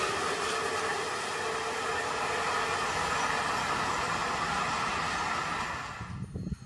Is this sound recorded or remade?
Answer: recorded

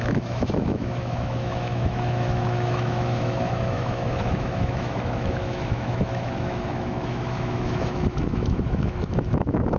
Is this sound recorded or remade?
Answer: remade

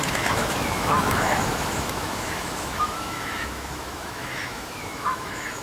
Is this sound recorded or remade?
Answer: remade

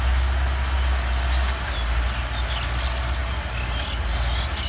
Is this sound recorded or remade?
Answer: recorded